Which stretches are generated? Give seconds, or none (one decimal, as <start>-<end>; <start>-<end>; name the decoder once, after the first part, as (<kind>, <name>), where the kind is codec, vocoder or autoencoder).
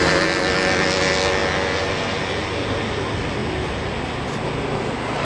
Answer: none